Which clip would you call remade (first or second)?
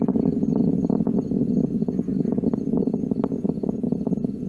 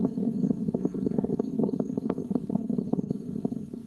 second